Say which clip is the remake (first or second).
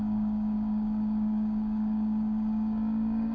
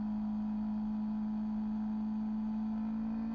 first